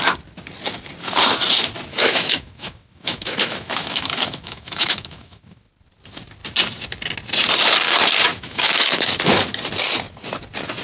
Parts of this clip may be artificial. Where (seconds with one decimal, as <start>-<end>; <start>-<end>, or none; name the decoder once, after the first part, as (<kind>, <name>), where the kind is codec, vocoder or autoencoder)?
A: 1.9-5.7 (autoencoder, DAC-VAE); 8.3-9.2